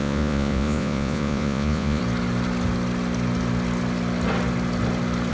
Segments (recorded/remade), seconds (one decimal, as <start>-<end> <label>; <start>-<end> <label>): 0.0-2.0 remade; 2.0-5.3 recorded